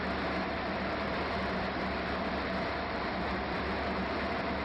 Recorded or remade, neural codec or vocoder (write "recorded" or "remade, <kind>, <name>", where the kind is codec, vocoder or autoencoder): remade, vocoder, BigVGAN v2